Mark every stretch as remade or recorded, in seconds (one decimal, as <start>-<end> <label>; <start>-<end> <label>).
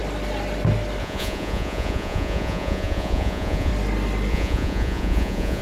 0.0-1.0 recorded; 1.0-3.7 remade; 3.7-4.3 recorded; 4.3-5.6 remade